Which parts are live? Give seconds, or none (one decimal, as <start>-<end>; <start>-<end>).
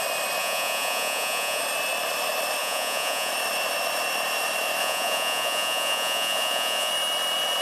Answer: 0.0-0.4; 1.6-2.6; 3.3-4.8; 6.9-7.6